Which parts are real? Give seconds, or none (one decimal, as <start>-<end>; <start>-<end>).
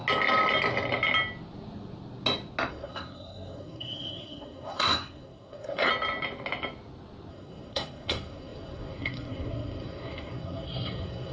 0.0-2.7; 5.9-7.3